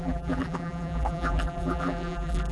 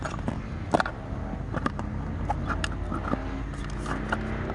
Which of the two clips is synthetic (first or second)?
first